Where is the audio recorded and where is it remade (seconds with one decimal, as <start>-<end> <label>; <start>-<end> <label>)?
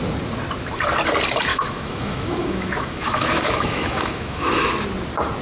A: 0.0-1.5 recorded; 1.5-4.7 remade; 4.7-5.4 recorded